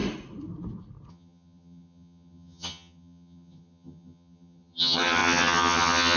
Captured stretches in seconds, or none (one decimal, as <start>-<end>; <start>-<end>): 0.0-1.1